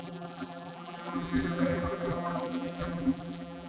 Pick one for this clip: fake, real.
fake